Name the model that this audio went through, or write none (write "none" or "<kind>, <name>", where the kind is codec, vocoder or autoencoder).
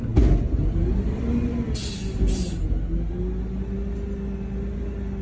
none